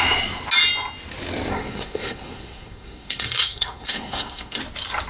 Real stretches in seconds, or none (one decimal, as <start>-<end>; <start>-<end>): 0.0-1.5; 4.6-5.1